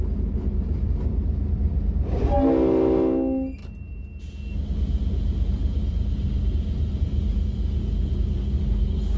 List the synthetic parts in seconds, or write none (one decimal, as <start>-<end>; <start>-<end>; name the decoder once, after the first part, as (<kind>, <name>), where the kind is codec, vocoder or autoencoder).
none